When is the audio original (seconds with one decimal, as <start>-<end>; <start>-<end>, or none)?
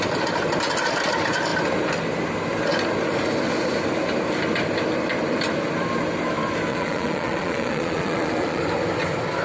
0.0-6.7; 8.6-9.4